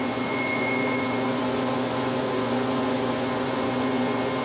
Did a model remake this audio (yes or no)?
yes